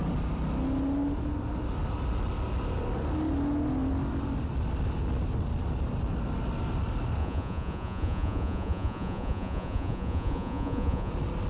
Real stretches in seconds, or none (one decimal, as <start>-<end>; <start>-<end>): 0.0-7.2; 11.1-11.5